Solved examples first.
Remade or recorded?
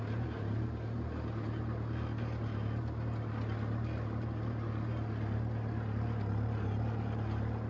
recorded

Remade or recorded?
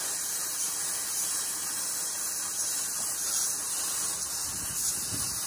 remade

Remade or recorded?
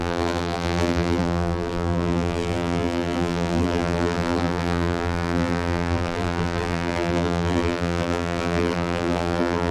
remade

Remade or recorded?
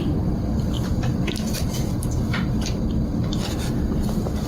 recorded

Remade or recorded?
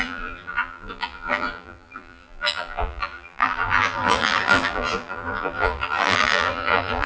remade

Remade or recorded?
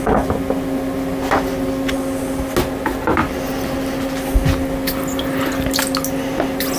recorded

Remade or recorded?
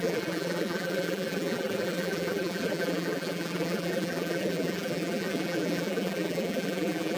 remade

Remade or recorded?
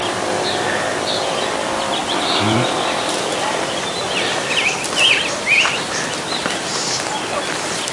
remade